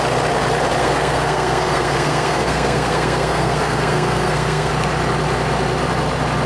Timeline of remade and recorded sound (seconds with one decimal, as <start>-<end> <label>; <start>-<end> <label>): 0.0-0.8 recorded; 0.8-4.7 remade; 4.7-6.5 recorded